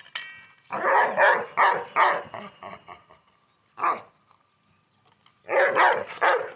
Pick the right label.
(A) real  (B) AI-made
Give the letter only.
A